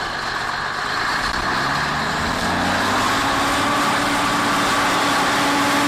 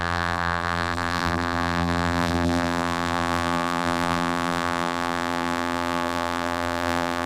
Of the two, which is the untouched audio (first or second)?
first